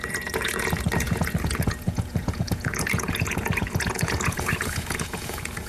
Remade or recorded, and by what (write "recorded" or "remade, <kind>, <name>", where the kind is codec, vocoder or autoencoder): remade, vocoder, Vocos